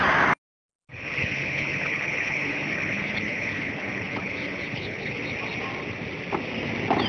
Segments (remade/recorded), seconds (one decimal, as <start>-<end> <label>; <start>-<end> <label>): 0.0-0.9 recorded; 0.9-5.2 remade; 5.2-7.1 recorded